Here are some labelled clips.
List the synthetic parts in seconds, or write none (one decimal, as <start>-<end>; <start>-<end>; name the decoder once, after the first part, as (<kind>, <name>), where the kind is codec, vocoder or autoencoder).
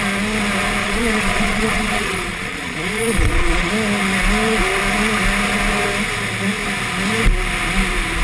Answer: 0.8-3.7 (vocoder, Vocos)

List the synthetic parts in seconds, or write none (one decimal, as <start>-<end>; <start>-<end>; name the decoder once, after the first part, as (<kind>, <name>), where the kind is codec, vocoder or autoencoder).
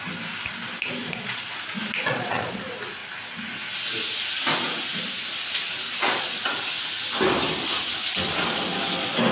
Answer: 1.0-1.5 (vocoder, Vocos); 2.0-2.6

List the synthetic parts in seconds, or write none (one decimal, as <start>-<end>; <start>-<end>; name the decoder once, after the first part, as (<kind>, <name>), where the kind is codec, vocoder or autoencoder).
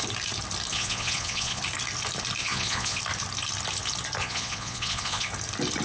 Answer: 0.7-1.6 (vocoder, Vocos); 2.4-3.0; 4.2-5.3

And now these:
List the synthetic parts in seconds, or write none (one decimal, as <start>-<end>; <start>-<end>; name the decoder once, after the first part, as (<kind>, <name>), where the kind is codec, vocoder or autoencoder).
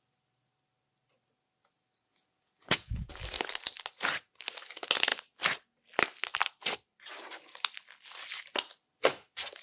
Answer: 2.1-3.1 (vocoder, Vocos)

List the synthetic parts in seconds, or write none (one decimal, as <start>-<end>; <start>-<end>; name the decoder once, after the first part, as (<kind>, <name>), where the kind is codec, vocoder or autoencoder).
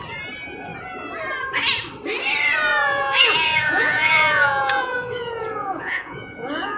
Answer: 2.7-6.8 (vocoder, Vocos)